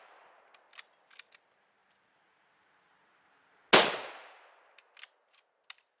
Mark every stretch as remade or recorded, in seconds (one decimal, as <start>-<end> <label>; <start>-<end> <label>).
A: 0.0-6.0 recorded